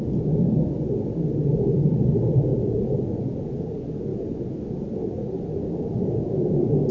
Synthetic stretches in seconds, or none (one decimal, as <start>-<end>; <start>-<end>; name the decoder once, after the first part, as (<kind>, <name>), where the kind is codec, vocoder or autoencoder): 2.5-3.5 (vocoder, Vocos)